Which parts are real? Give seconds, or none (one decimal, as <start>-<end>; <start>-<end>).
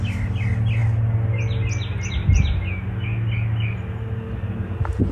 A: 0.0-5.1